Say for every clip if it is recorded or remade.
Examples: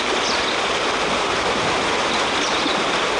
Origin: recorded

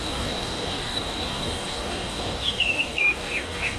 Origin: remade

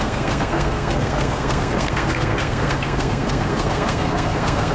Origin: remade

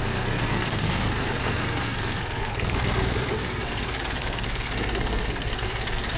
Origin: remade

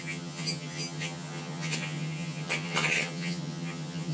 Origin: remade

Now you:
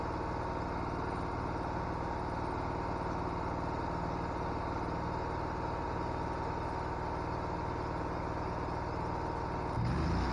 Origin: recorded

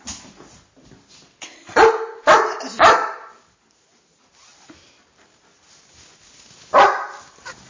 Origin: recorded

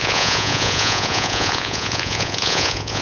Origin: remade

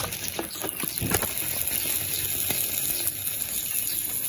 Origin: recorded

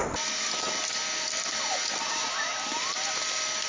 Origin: recorded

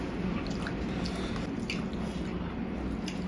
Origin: recorded